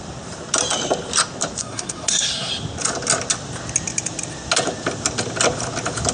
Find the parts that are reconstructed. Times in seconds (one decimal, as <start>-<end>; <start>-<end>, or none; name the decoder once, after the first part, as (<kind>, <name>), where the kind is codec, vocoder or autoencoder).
1.6-2.5 (codec, SNAC)